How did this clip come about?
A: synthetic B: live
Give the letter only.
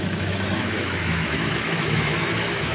A